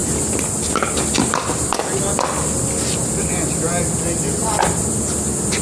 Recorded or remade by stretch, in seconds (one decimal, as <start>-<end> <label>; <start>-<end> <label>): 0.0-5.6 recorded